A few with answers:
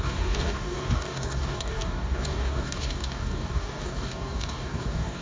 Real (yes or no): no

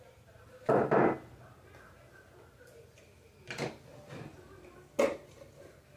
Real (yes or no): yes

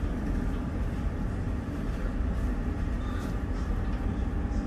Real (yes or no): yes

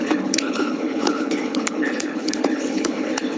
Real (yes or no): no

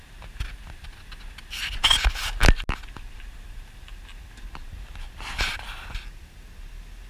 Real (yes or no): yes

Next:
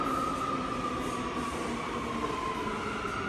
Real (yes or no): yes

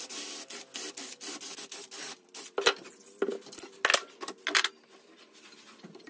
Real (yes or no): yes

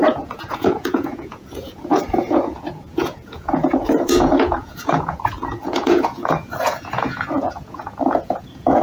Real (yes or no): no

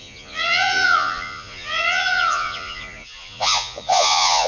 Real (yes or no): no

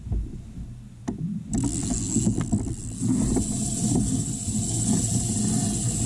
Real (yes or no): yes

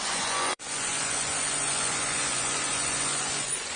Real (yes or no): no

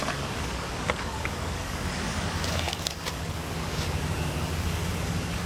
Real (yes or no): no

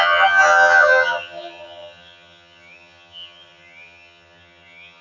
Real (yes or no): no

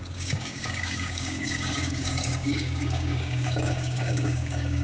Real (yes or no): no